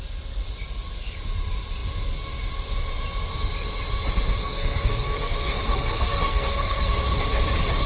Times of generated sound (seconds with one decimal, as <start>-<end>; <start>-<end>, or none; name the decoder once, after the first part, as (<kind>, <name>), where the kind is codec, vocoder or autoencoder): 4.4-7.0 (codec, SNAC)